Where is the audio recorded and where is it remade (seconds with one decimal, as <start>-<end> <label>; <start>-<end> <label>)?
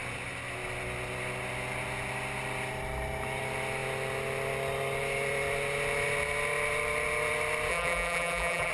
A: 0.0-7.7 recorded; 7.7-8.7 remade